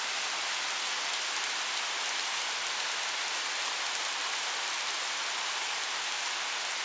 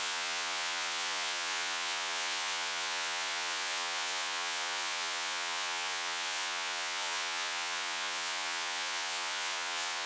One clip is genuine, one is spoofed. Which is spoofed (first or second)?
second